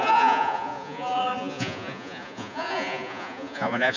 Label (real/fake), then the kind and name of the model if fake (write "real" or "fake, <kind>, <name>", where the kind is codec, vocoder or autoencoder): fake, vocoder, Vocos